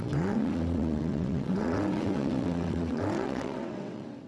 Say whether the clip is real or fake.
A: fake